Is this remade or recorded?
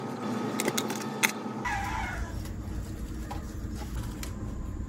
recorded